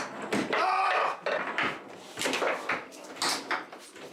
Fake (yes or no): no